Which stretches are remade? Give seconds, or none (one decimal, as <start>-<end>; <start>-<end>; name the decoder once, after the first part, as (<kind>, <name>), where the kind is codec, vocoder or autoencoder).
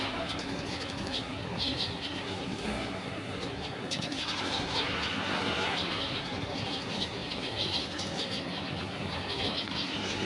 0.0-10.3 (codec, SNAC)